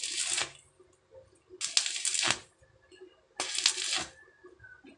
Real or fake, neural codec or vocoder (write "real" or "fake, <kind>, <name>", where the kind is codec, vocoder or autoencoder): real